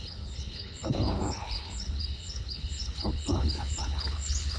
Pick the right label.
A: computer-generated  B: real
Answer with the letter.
A